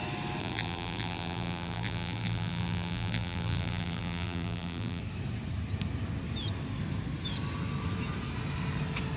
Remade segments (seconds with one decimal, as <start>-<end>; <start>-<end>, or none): 0.4-5.0